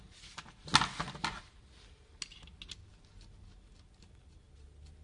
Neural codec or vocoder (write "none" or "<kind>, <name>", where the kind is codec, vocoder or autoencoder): none